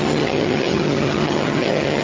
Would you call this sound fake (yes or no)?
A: yes